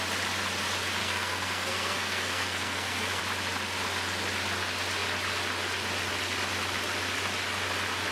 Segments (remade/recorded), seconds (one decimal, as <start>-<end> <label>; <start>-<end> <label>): 0.0-1.0 recorded; 1.0-3.2 remade; 3.2-8.1 recorded